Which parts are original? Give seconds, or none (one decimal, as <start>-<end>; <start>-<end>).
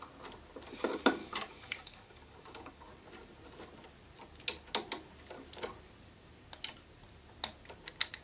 0.0-1.2; 2.9-8.2